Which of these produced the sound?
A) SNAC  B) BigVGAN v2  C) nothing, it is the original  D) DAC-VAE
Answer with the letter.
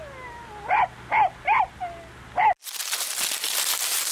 C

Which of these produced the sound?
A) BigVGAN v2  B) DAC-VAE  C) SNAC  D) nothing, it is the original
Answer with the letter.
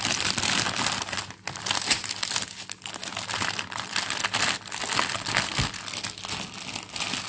D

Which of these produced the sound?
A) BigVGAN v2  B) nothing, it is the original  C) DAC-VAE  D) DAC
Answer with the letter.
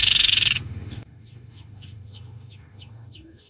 C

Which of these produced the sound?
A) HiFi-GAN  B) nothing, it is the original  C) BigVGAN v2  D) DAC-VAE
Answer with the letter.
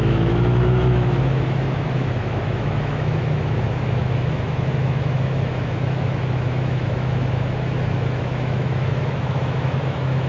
D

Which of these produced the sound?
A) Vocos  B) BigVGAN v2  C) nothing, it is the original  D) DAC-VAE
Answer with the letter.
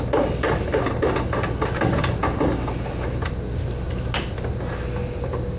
C